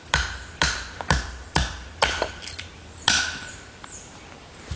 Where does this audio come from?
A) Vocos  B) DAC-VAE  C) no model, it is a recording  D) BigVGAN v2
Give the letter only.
C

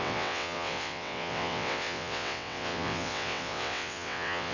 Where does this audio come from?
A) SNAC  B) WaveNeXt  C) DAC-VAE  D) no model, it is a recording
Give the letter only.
B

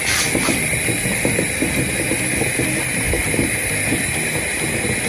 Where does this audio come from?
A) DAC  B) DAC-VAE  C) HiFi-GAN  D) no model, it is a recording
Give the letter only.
D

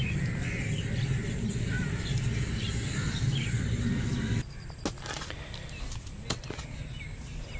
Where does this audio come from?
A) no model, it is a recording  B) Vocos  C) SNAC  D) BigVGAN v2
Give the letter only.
A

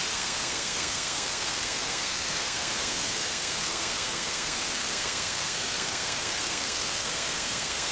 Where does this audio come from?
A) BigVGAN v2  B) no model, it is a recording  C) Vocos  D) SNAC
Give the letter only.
D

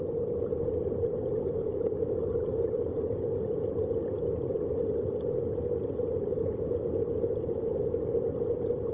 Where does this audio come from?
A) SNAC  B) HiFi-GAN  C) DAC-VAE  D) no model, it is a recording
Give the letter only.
D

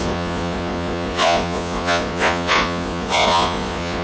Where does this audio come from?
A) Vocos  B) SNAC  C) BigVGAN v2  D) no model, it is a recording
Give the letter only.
A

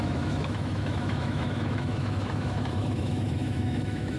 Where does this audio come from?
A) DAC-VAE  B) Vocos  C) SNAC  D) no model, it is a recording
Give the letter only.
A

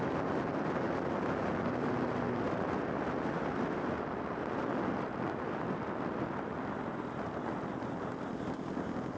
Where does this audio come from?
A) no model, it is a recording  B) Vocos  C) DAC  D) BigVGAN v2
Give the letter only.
A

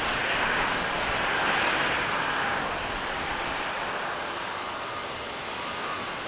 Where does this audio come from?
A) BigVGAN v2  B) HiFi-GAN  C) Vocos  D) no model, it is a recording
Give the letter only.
D